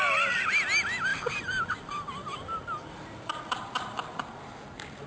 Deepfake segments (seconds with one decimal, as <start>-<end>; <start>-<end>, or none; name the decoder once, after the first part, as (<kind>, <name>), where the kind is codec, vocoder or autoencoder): 1.1-4.2 (vocoder, BigVGAN v2)